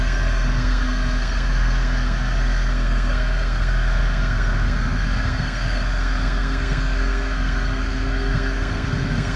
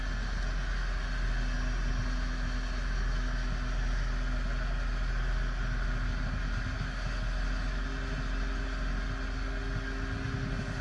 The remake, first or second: first